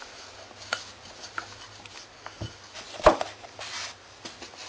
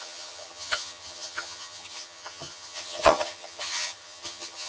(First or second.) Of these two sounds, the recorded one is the first